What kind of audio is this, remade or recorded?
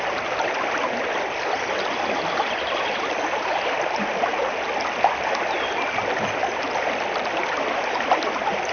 recorded